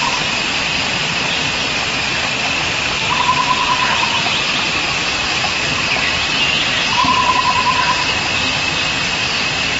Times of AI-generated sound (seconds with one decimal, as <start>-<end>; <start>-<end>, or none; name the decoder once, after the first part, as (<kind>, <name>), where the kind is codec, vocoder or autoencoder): 5.0-5.6 (autoencoder, DAC-VAE)